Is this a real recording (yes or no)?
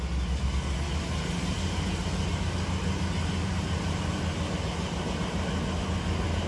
yes